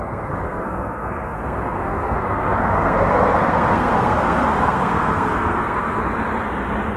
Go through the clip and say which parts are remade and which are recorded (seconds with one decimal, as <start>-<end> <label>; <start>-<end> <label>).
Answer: 0.0-6.0 remade; 6.0-7.0 recorded